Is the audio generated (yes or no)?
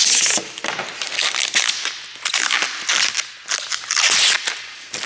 no